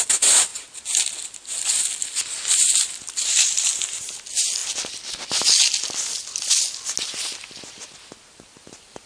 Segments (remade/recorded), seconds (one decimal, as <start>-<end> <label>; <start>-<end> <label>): 0.0-9.1 recorded

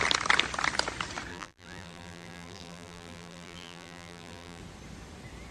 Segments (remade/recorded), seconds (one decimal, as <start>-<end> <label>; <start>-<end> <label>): 0.0-1.3 recorded; 1.3-4.6 remade; 4.6-5.5 recorded

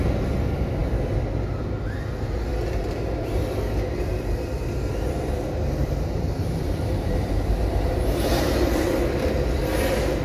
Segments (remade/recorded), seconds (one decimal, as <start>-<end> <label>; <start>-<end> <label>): 0.0-5.8 recorded; 5.8-8.5 remade; 8.5-10.2 recorded

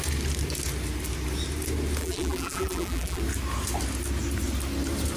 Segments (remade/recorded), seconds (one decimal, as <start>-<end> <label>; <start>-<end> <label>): 0.0-2.0 recorded; 2.0-3.2 remade; 3.2-5.2 recorded